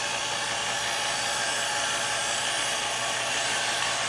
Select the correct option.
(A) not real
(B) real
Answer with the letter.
B